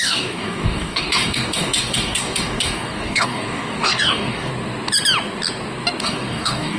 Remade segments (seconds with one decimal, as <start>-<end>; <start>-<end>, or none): 0.0-4.5; 6.0-6.8